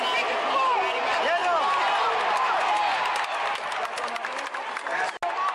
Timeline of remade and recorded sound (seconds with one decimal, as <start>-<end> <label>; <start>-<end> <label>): 0.0-5.5 recorded